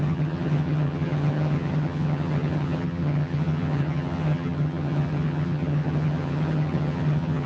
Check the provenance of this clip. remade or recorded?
remade